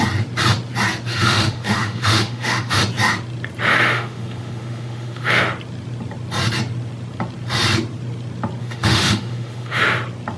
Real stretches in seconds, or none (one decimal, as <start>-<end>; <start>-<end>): 0.0-1.1; 2.8-3.7; 5.4-8.6; 9.8-10.4